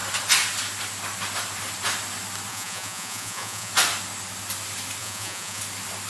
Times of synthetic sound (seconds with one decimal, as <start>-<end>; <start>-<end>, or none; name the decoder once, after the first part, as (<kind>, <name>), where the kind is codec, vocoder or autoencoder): 2.5-3.7 (vocoder, Vocos); 5.0-5.6